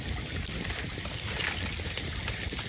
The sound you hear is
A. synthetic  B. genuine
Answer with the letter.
B